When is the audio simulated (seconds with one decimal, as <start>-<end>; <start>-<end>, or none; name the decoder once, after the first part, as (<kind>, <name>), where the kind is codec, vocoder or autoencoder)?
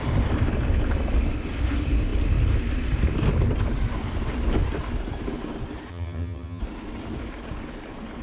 5.9-6.6 (vocoder, HiFi-GAN)